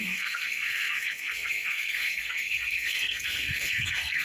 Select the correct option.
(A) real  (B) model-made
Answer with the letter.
B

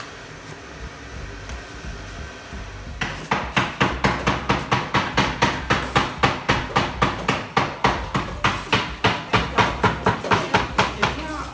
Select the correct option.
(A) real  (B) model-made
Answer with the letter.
A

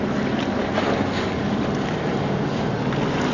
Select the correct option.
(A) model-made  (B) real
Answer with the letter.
B